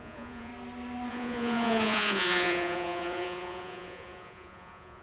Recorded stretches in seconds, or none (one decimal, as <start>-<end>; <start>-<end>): 0.5-1.1